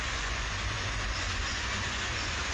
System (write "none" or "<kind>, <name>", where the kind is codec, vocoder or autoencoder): vocoder, Vocos